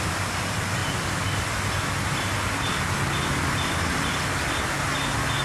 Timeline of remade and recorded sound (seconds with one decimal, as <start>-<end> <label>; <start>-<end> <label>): 0.0-5.4 recorded